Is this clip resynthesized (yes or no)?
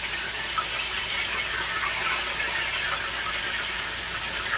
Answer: no